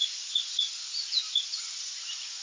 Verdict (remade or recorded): recorded